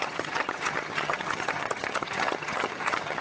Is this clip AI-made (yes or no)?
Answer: yes